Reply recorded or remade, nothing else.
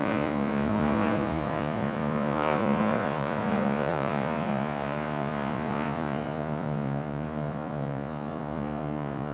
remade